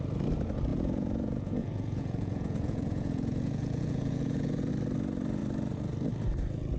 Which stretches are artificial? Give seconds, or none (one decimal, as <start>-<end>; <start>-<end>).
0.7-4.7